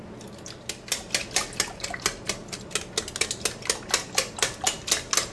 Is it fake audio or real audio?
real